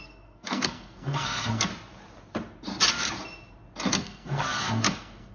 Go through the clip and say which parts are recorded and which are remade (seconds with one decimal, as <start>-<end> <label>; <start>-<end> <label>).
0.0-1.7 remade; 1.7-3.9 recorded; 3.9-5.3 remade